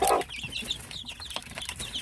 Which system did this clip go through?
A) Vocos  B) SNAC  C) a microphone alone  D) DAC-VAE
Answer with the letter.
C